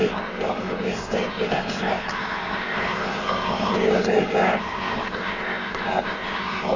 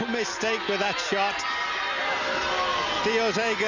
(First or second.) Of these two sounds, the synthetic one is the first